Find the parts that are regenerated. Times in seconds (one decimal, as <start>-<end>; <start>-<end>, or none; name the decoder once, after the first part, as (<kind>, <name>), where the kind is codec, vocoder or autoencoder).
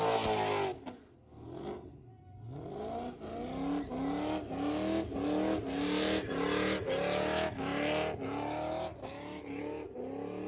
none